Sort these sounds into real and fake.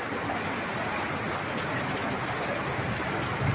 real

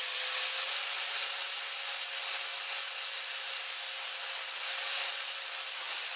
real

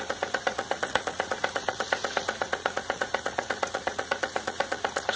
fake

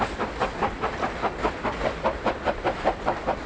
real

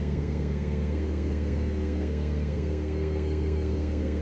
fake